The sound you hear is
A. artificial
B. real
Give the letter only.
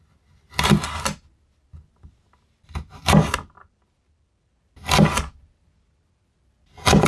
B